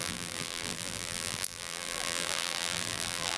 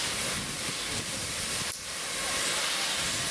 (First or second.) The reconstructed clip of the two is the first